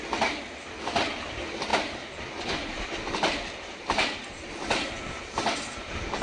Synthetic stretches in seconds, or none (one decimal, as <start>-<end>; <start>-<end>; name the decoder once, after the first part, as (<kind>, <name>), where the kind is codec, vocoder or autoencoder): 1.7-4.5 (vocoder, BigVGAN v2)